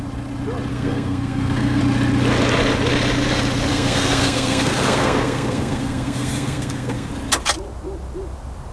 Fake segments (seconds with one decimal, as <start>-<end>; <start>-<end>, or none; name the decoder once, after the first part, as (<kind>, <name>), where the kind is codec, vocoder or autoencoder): 0.7-1.8 (codec, SNAC); 3.7-7.1